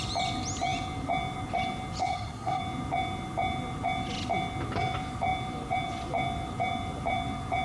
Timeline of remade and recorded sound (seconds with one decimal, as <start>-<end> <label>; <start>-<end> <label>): 0.0-2.0 recorded; 2.0-2.6 remade; 2.6-7.6 recorded